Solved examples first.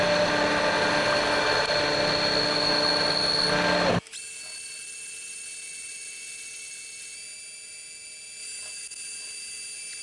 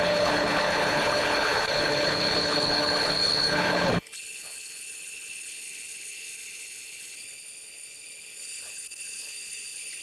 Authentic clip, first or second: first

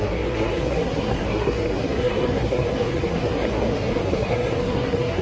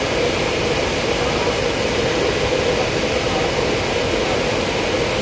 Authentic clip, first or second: second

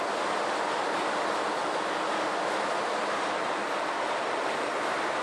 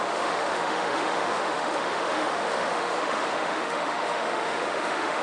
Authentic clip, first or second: first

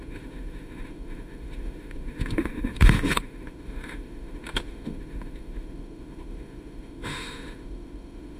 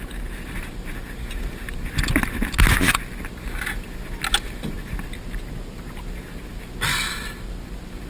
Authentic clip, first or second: second